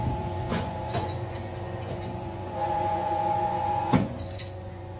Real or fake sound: fake